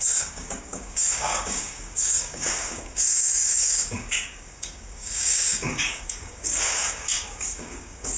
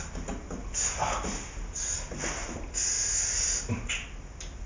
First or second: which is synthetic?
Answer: first